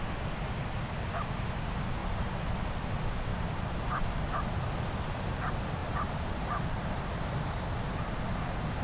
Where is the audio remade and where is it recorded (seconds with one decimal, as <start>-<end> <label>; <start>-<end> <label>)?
0.0-2.0 recorded; 2.0-2.9 remade; 2.9-5.8 recorded; 5.8-7.0 remade; 7.0-8.8 recorded